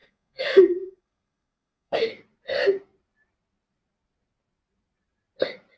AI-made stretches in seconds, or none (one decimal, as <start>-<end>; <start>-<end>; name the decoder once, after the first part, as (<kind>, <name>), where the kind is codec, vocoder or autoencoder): 0.0-2.1 (codec, SNAC)